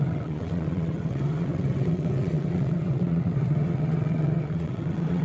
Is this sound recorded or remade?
remade